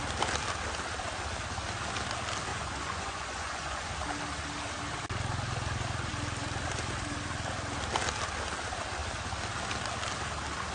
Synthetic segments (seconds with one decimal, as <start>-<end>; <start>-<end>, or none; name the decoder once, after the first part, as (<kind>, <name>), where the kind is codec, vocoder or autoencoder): 2.5-3.9 (vocoder, Vocos)